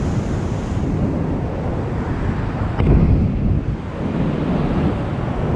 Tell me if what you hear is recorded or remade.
recorded